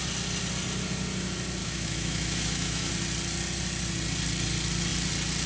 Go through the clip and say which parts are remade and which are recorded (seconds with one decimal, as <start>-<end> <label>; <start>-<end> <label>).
0.0-1.6 recorded; 1.6-2.9 remade; 2.9-5.5 recorded